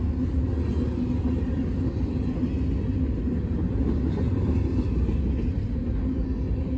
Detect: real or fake real